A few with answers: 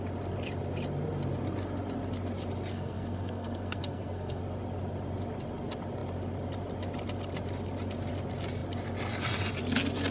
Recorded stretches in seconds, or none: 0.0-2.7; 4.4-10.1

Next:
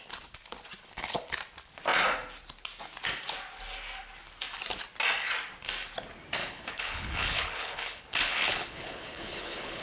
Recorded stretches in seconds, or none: 0.0-0.8; 1.3-6.4

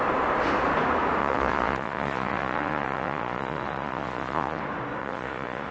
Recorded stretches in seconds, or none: 0.0-1.2; 4.6-5.0

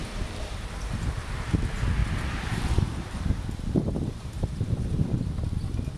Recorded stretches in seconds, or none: 1.1-2.0; 5.6-6.0

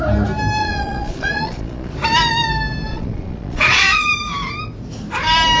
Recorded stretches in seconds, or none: 0.0-0.6; 1.9-2.9; 4.1-5.6

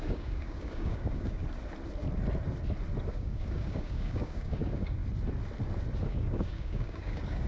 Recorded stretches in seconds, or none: 1.4-3.1; 5.0-6.0

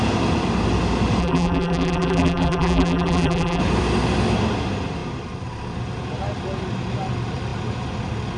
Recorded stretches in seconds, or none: 0.0-1.2; 3.6-8.4

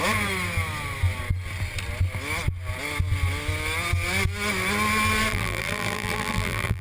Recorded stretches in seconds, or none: 0.0-5.3